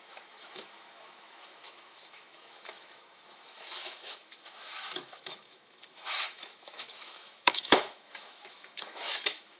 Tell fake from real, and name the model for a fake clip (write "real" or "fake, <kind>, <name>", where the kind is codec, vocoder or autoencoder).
fake, autoencoder, DAC-VAE